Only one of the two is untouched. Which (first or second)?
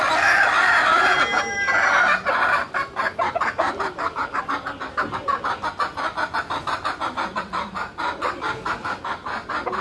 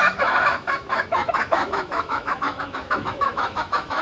first